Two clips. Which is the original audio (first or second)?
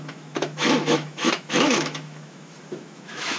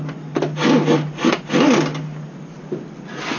second